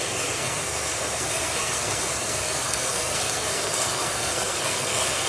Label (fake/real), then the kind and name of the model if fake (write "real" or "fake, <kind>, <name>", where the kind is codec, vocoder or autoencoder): fake, codec, SNAC